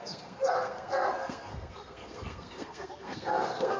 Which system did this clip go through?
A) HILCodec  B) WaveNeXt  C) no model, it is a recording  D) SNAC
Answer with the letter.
D